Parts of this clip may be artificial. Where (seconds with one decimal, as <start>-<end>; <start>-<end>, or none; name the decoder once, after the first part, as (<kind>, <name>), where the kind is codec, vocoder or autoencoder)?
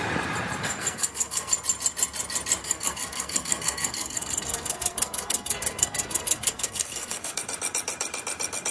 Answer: 0.6-1.5 (codec, SNAC); 2.6-7.4